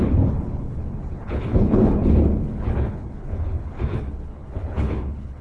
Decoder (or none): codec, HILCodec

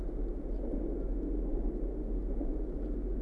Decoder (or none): none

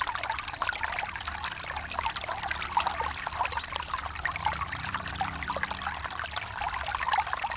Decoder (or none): none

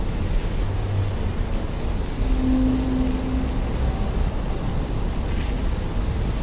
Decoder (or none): none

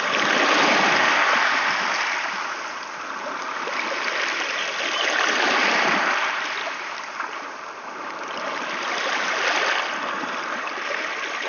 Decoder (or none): none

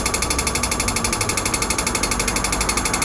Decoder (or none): none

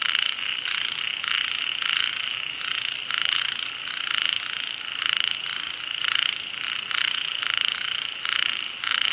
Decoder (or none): none